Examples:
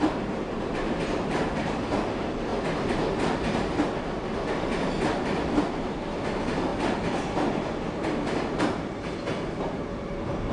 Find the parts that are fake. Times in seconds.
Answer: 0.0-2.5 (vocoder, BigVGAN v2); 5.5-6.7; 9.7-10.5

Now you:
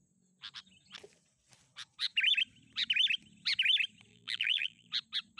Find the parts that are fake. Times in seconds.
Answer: 4.1-4.9 (vocoder, BigVGAN v2)

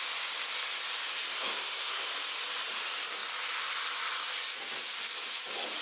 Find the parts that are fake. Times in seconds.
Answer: 1.3-2.0 (codec, SNAC)

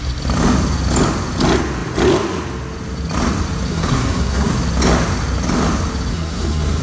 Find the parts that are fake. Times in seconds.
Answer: 3.7-4.5 (codec, SNAC); 6.1-6.8

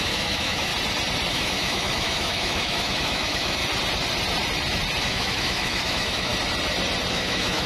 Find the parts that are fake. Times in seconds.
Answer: 0.0-0.7 (autoencoder, DAC-VAE); 1.3-3.6; 5.0-6.3; 7.1-7.7

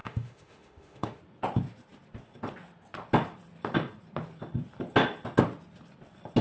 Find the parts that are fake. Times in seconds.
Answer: 0.0-1.2 (autoencoder, DAC-VAE)

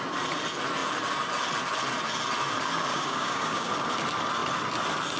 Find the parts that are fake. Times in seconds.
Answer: 2.9-3.7 (codec, DAC)

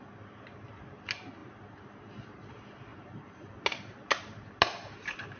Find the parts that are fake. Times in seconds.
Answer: 2.9-3.5 (vocoder, BigVGAN v2)